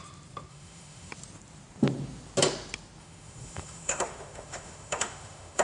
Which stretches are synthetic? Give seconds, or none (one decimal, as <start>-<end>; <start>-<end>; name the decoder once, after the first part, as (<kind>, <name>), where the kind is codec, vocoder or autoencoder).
0.5-1.1 (autoencoder, DAC-VAE); 3.0-5.6